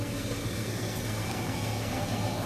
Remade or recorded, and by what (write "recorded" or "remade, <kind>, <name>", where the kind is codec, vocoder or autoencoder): remade, codec, SNAC